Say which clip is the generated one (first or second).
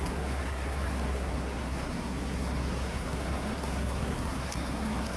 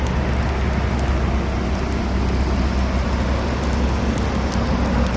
first